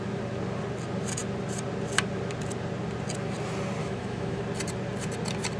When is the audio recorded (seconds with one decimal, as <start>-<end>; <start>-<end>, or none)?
0.0-3.8; 4.4-5.6